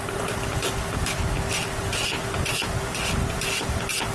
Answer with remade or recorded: recorded